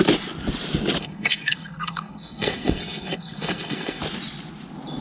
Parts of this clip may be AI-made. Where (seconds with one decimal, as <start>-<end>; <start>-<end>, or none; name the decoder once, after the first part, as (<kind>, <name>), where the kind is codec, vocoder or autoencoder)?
1.0-4.0 (codec, SNAC)